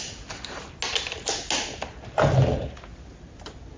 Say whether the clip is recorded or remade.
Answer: recorded